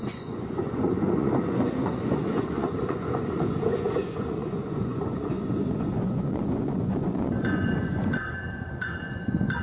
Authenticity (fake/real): fake